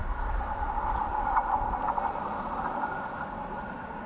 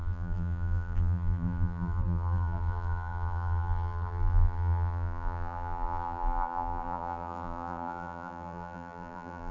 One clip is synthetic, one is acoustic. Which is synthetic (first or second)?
second